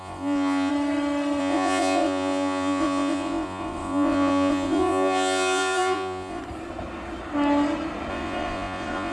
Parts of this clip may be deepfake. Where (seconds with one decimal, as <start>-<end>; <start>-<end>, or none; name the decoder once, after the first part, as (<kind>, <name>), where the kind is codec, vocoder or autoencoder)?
0.0-0.7 (vocoder, Vocos); 1.4-6.4; 8.1-9.1